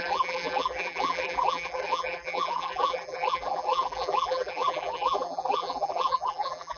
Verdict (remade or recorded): remade